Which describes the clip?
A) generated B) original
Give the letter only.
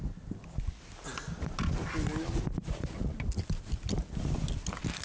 B